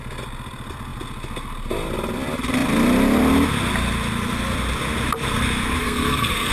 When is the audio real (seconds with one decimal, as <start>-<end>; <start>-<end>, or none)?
0.0-5.8